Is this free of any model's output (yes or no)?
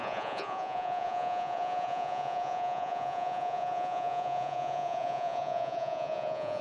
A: no